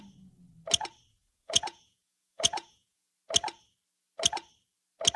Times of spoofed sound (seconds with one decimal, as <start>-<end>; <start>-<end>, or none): 1.2-3.1